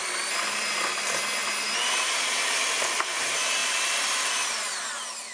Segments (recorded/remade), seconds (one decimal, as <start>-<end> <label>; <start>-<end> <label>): 0.0-5.3 recorded